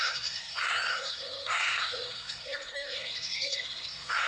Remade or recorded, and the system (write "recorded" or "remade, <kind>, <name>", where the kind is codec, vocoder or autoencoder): remade, codec, SNAC